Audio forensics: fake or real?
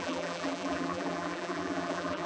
fake